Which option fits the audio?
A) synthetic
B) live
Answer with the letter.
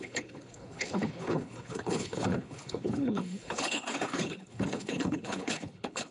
A